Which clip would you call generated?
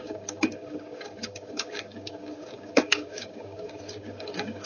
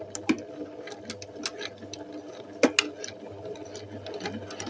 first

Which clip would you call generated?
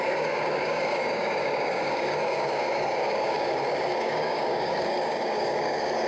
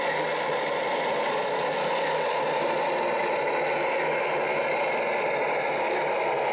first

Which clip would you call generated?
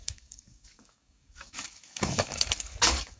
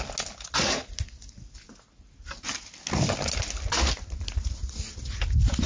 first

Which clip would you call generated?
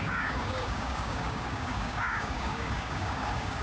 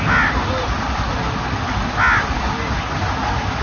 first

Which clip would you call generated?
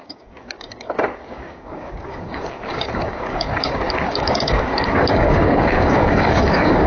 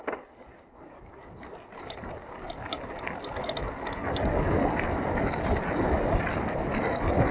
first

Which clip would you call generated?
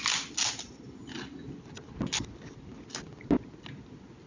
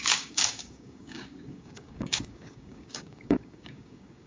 second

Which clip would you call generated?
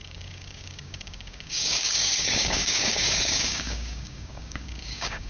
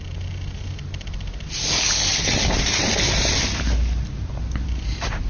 first